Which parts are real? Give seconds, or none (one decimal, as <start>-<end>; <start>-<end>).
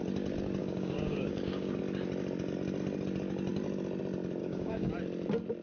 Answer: 0.0-0.6; 1.8-4.4; 4.9-5.6